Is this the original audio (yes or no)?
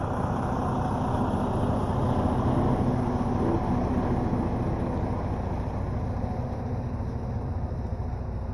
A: yes